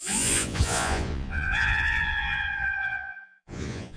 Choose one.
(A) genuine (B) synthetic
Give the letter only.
B